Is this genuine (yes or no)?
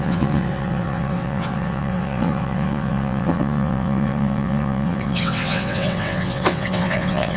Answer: no